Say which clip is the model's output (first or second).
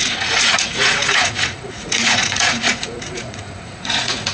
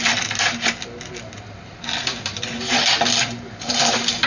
first